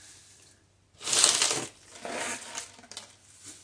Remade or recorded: recorded